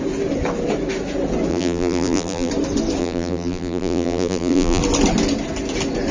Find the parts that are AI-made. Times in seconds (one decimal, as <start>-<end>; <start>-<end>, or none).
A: 1.5-2.5; 3.0-4.8